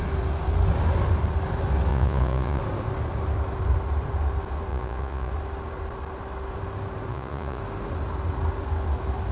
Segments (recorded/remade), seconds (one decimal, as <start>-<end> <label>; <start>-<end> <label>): 0.0-1.9 recorded; 1.9-2.6 remade; 2.6-4.7 recorded; 4.7-5.3 remade; 5.3-7.1 recorded; 7.1-7.6 remade; 7.6-9.3 recorded